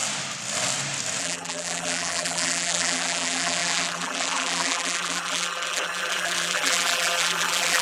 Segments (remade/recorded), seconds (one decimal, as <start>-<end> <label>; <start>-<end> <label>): 0.0-1.2 recorded; 1.2-7.8 remade